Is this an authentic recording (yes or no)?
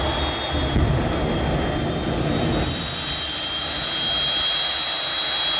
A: yes